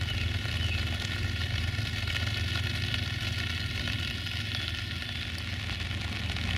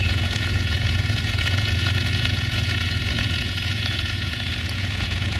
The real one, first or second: first